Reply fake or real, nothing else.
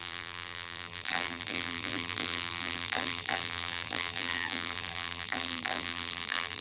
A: fake